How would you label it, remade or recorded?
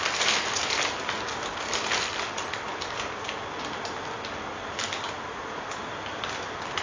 recorded